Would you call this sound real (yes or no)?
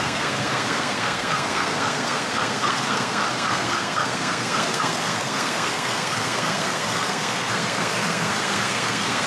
no